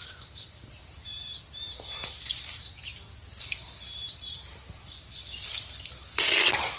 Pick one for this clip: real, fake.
real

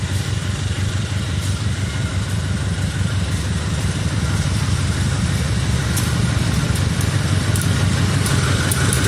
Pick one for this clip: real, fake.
fake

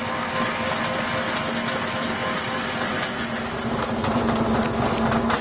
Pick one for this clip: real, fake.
real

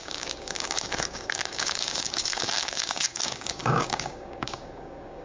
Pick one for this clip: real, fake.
fake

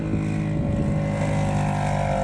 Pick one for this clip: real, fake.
real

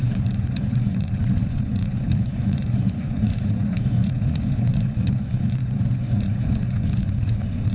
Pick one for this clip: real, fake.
fake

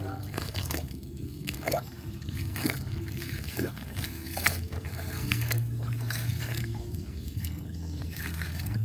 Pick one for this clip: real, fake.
fake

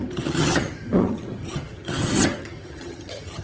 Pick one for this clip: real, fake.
fake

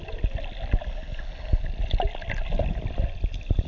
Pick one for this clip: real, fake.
real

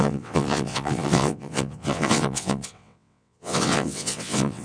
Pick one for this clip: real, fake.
fake